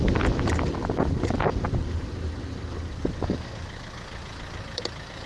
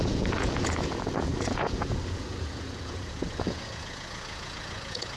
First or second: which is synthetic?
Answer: second